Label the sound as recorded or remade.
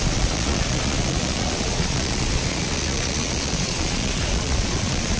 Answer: remade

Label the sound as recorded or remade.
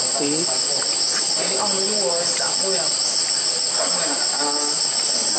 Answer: recorded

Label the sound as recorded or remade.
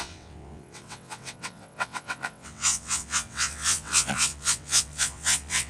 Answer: remade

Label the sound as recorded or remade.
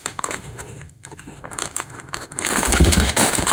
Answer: remade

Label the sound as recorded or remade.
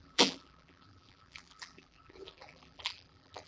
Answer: remade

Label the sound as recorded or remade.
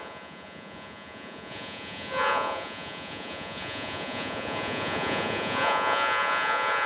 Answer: remade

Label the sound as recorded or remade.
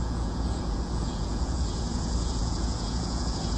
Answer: remade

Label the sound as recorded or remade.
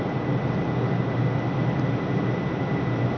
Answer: recorded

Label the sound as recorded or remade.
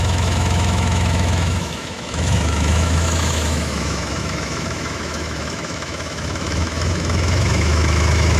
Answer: remade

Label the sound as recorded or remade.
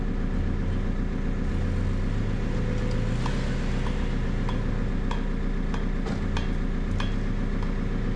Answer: recorded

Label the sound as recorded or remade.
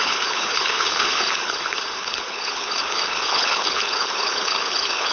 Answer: remade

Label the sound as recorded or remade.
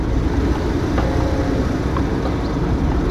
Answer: recorded